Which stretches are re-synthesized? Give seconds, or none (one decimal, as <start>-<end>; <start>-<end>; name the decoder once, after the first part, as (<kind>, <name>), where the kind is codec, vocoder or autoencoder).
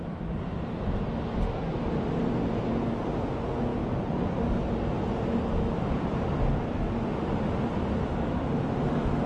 none